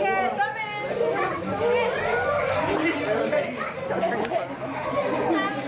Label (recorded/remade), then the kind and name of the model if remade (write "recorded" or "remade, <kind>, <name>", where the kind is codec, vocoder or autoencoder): recorded